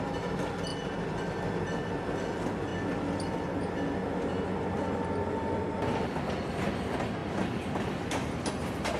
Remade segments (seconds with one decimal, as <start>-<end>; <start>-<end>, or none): 0.7-1.2; 7.2-8.5